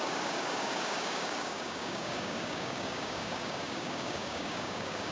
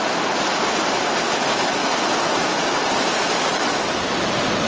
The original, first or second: second